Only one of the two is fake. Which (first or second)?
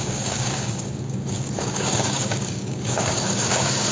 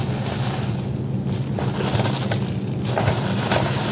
first